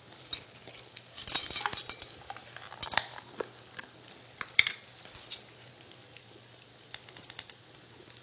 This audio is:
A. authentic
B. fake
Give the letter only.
A